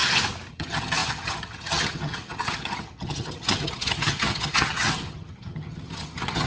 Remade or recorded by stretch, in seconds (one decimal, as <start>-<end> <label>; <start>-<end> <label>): 0.0-0.5 recorded; 0.5-6.5 remade